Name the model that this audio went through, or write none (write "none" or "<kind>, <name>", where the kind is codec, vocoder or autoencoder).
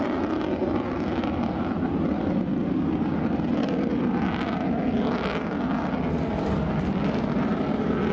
none